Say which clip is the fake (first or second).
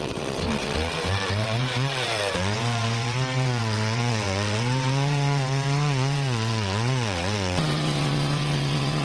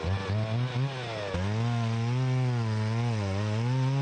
first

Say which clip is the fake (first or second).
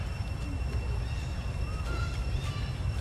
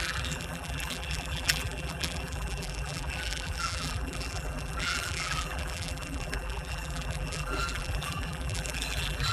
second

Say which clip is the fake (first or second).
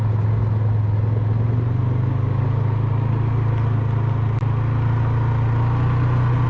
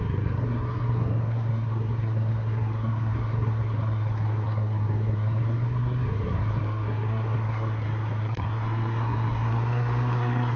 second